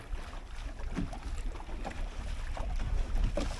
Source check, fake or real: real